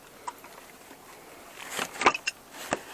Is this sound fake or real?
real